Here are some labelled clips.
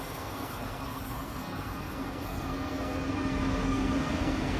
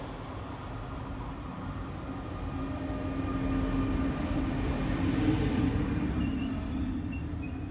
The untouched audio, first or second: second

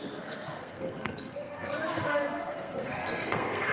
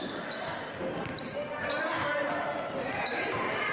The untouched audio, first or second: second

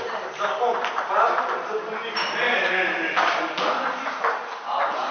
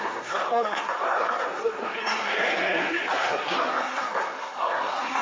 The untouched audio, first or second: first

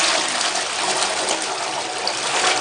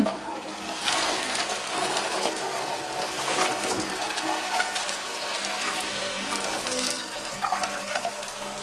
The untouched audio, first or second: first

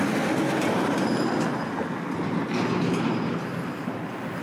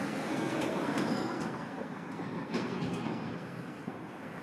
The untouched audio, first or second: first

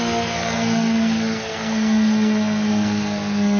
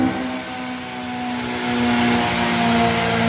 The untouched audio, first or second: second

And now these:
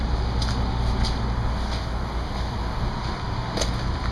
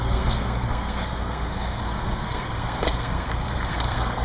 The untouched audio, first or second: first